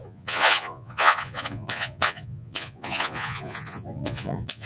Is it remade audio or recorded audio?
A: remade